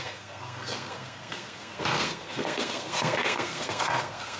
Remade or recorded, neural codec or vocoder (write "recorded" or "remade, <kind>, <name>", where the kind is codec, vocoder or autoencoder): remade, codec, SNAC